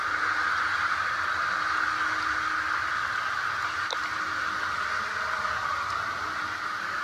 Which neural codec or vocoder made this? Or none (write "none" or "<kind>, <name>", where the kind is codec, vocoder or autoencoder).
none